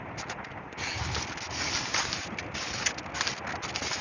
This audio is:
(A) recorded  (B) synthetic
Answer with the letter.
A